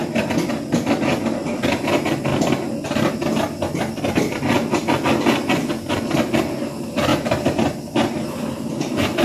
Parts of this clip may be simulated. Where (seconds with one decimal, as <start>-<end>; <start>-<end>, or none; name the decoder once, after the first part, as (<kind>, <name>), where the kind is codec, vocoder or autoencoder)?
7.1-9.2 (vocoder, BigVGAN v2)